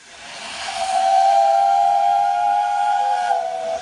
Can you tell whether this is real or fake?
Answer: fake